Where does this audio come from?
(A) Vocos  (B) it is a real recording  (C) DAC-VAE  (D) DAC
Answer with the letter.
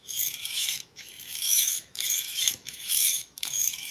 C